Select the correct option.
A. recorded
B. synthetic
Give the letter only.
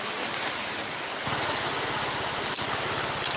A